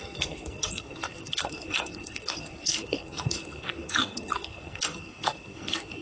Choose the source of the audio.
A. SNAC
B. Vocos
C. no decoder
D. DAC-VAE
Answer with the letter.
A